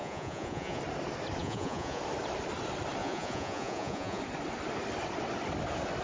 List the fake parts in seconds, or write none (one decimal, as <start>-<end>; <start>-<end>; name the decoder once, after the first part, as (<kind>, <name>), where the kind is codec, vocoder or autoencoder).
0.0-0.8 (vocoder, Vocos); 1.4-2.0; 3.0-4.2